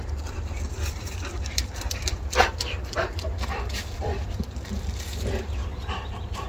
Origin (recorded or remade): remade